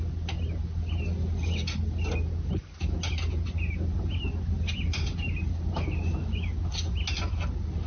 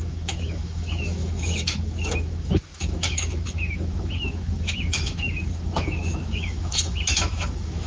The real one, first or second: first